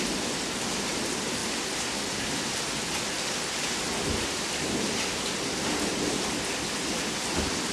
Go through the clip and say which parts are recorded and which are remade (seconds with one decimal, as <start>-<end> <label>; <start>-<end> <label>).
0.0-7.7 recorded